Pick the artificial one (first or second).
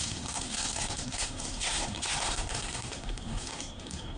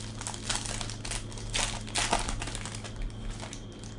first